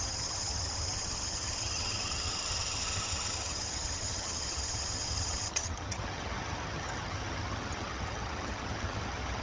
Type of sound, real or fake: fake